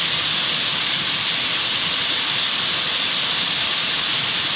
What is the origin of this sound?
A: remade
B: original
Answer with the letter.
B